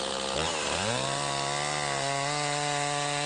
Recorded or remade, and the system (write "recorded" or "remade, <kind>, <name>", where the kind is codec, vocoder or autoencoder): recorded